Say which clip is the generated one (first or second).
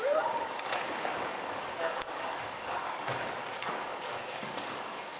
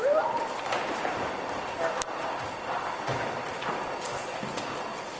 first